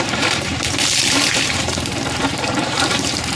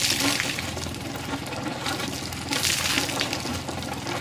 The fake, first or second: first